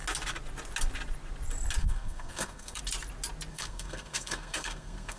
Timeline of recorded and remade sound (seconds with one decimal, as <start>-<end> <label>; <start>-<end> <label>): 0.0-1.8 recorded; 1.8-2.8 remade; 2.8-3.5 recorded; 3.5-5.2 remade